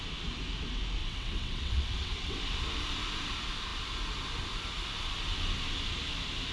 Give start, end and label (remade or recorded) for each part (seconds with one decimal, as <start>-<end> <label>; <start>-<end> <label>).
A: 0.0-1.0 recorded; 1.0-2.4 remade; 2.4-6.5 recorded